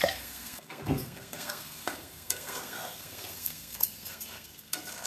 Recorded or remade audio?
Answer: remade